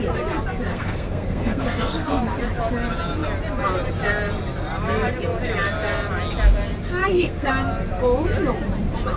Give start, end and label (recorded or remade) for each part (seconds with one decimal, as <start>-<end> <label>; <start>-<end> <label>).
0.0-0.7 recorded; 0.7-2.2 remade; 2.2-7.0 recorded; 7.0-7.5 remade; 7.5-9.2 recorded